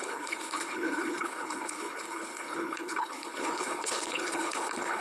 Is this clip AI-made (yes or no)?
yes